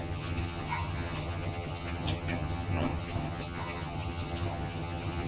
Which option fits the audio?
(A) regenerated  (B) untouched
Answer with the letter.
A